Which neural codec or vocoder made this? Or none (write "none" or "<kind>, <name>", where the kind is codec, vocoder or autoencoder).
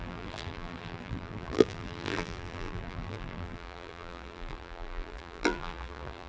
vocoder, BigVGAN v2